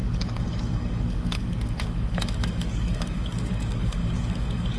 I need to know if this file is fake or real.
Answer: fake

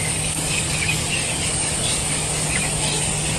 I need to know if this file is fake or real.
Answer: fake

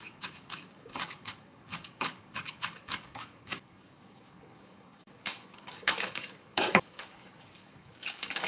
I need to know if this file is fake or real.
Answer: fake